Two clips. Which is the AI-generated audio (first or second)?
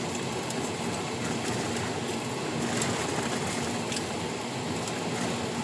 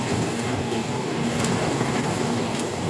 second